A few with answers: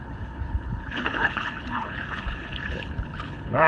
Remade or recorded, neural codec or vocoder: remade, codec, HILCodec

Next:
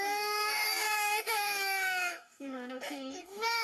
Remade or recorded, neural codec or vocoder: remade, codec, DAC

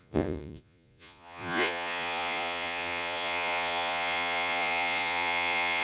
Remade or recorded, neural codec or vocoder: remade, vocoder, Vocos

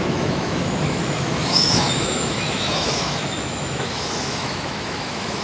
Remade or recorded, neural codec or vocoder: remade, autoencoder, DAC-VAE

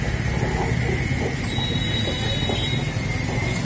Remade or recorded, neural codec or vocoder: recorded